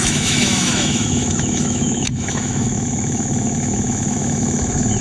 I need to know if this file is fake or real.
fake